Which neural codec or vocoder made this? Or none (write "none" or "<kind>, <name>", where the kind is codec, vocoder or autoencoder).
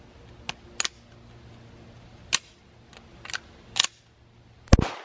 none